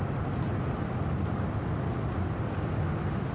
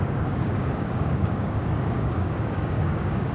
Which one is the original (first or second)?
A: first